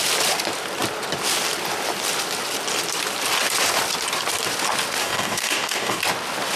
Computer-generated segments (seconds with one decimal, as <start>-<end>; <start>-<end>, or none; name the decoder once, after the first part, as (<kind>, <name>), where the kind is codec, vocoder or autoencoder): 5.0-6.0 (codec, DAC)